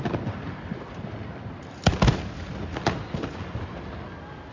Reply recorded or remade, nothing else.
recorded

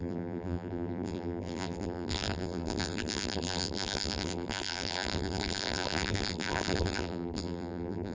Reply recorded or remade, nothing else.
remade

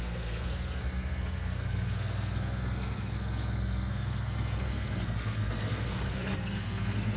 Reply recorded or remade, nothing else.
remade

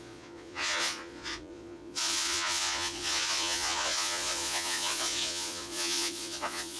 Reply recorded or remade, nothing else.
remade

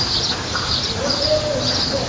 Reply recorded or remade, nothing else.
recorded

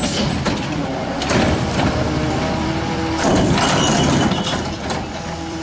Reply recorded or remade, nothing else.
remade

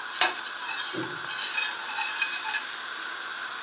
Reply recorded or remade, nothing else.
recorded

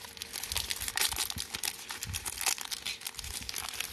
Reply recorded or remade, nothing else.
recorded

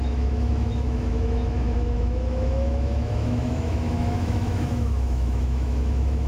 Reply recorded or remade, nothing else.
remade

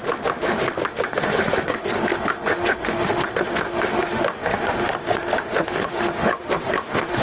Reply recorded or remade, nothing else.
remade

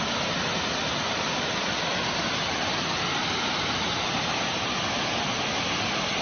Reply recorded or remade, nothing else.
recorded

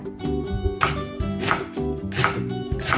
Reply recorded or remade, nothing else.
recorded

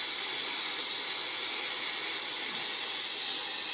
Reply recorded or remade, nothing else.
recorded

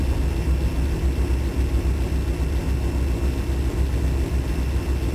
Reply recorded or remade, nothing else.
recorded